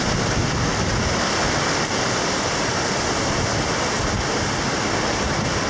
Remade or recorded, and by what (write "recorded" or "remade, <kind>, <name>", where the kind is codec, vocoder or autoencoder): recorded